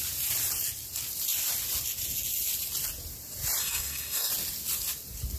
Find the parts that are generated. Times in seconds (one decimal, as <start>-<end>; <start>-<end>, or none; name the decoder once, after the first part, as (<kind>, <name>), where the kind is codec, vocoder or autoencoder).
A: 3.6-4.3 (codec, SNAC)